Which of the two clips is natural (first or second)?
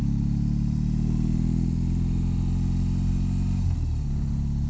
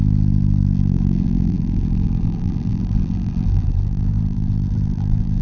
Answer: first